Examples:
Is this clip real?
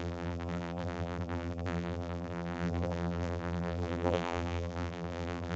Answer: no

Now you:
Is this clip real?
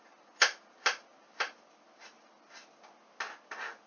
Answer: yes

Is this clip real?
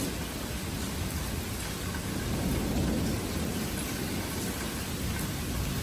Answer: yes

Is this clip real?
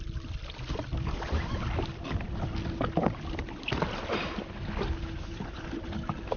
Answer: yes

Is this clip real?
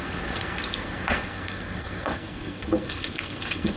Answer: no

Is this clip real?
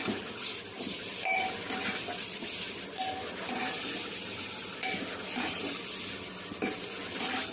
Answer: yes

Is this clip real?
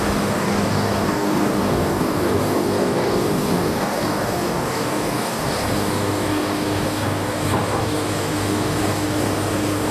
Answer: no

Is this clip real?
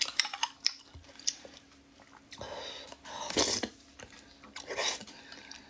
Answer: yes